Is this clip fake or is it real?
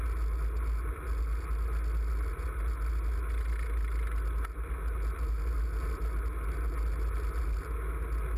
real